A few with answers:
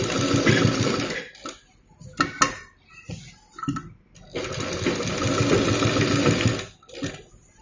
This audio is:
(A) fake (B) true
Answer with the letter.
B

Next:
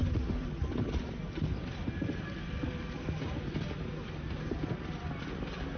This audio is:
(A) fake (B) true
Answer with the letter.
B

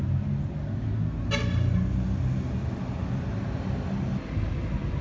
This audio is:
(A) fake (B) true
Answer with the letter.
B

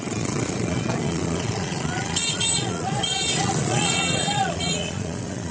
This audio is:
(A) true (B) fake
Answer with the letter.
B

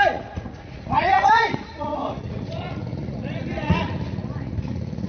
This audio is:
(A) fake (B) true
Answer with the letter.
A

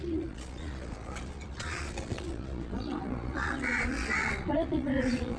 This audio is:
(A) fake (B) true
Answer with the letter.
A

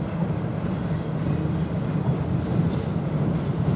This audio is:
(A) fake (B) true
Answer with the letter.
B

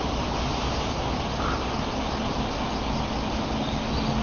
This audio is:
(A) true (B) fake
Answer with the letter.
A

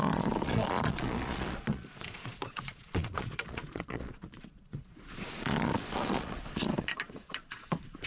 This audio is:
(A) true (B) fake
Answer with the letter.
B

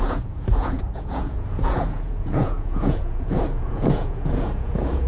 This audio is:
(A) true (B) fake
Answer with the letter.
B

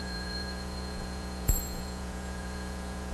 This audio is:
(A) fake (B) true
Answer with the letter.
A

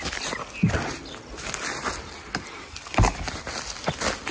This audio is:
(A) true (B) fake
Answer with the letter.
A